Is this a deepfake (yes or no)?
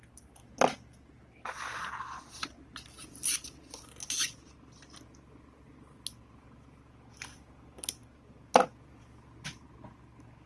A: no